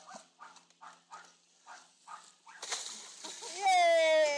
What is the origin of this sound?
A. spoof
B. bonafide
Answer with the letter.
B